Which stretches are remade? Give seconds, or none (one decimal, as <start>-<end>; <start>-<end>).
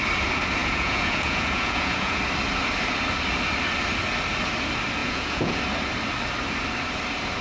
0.6-2.2; 5.0-5.6